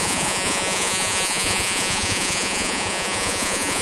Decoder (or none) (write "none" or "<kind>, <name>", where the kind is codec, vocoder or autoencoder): vocoder, Vocos